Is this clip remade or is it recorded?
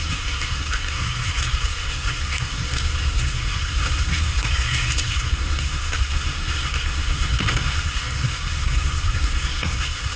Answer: remade